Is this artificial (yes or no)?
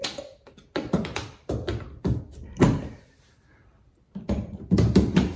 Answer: no